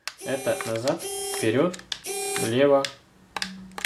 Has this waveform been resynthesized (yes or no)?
no